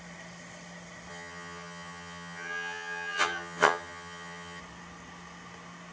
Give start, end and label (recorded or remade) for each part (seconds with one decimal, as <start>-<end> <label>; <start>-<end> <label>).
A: 0.0-1.1 recorded; 1.1-4.6 remade; 4.6-5.9 recorded